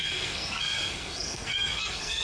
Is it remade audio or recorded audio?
remade